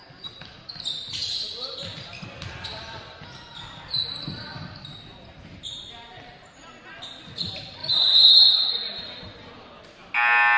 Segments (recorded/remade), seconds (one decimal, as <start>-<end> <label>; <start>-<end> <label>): 0.0-0.7 remade; 0.7-1.2 recorded; 1.2-3.8 remade; 3.8-10.6 recorded